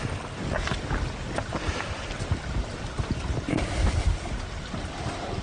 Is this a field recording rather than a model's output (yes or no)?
yes